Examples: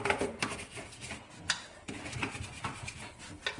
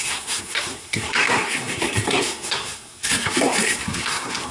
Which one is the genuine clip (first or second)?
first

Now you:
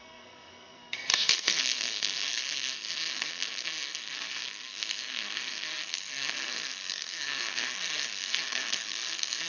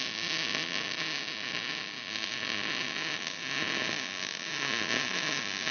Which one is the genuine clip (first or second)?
second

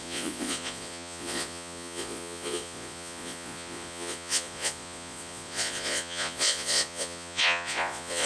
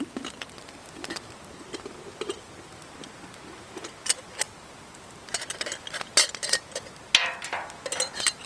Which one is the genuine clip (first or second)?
second